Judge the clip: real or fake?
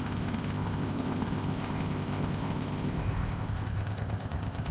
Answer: fake